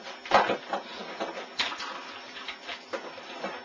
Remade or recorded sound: recorded